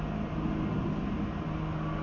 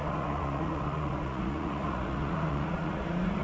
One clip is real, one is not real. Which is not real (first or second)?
second